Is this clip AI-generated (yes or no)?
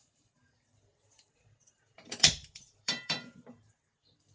yes